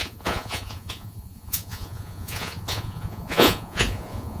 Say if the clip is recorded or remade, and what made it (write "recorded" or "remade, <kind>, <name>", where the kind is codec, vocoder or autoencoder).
remade, vocoder, Vocos